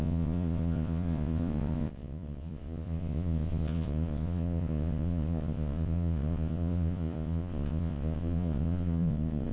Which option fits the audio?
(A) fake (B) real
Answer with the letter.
A